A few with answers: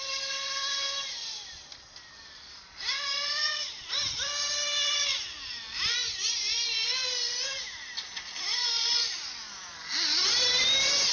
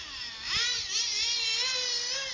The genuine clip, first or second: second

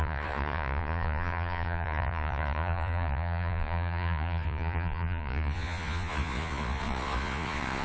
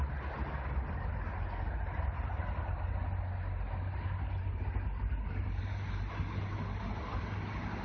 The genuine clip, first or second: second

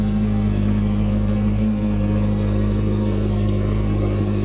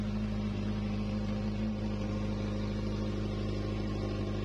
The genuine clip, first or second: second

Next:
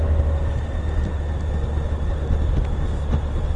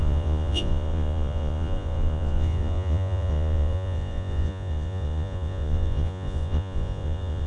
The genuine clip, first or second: first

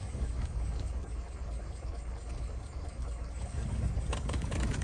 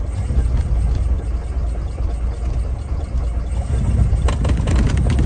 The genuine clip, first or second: second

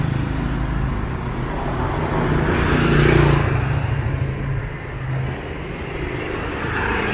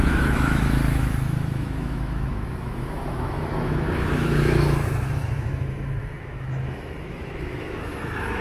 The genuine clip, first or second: first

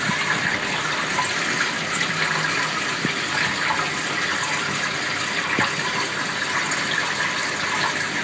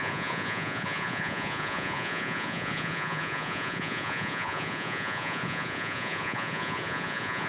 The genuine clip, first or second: first